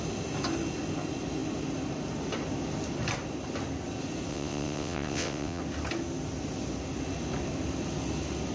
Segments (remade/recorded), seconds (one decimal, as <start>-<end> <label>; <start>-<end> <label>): 0.0-4.3 recorded; 4.3-5.6 remade; 5.6-8.5 recorded